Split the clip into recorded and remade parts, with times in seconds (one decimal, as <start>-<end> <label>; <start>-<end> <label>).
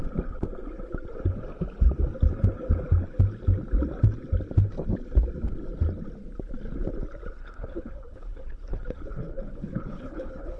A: 0.0-7.4 recorded; 7.4-10.6 remade